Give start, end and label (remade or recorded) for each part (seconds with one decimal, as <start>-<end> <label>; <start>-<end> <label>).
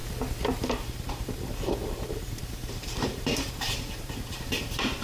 0.0-0.7 recorded; 0.7-5.0 remade